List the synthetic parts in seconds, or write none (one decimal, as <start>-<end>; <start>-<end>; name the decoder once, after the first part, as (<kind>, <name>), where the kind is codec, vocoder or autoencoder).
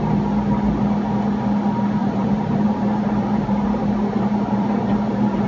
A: 2.0-5.5 (vocoder, BigVGAN v2)